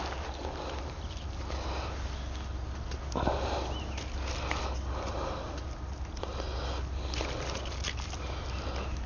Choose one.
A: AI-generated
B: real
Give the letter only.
B